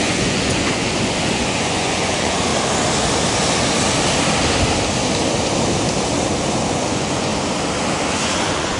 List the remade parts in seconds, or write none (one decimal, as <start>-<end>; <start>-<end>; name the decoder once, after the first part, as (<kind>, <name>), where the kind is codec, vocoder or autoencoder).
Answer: 0.0-2.5 (vocoder, Vocos); 6.7-7.3; 8.1-8.8